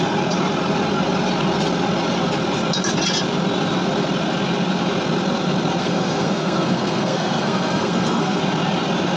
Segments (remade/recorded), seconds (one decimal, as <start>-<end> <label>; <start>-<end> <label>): 0.0-5.8 recorded; 5.8-8.4 remade; 8.4-9.2 recorded